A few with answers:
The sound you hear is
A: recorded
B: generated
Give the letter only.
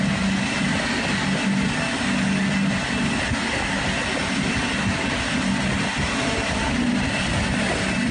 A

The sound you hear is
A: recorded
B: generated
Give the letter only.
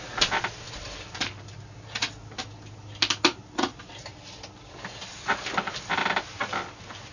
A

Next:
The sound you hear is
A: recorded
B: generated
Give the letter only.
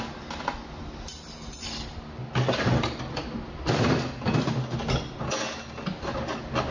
A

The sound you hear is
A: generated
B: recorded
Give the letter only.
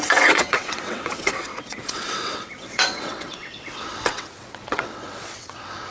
A